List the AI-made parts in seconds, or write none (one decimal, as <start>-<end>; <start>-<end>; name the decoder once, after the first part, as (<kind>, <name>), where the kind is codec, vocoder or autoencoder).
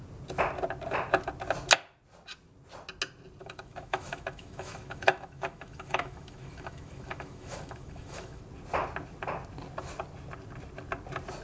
3.4-8.4 (autoencoder, DAC-VAE)